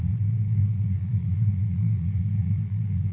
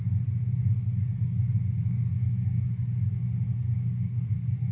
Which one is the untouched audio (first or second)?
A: second